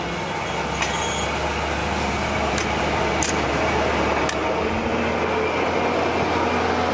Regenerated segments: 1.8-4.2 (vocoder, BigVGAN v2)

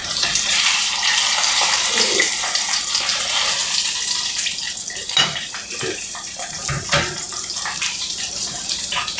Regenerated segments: 0.0-3.6 (vocoder, BigVGAN v2); 5.0-9.2

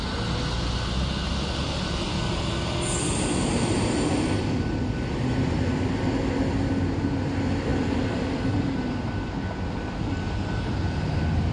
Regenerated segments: none

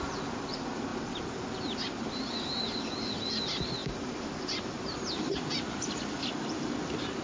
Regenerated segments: none

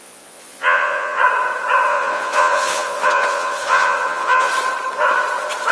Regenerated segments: 0.0-1.2 (vocoder, Vocos); 1.9-4.5

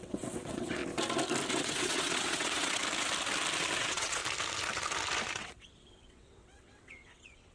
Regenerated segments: 0.0-0.8 (vocoder, WaveNeXt); 1.5-2.8; 3.8-4.2; 5.4-7.5

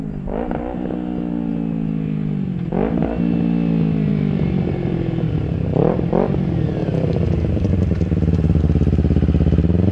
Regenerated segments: 4.1-5.3 (vocoder, BigVGAN v2); 6.8-8.6

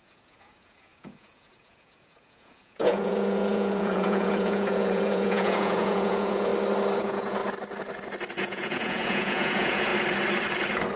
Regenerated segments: 0.0-6.5 (vocoder, Vocos); 7.0-7.4; 8.4-9.9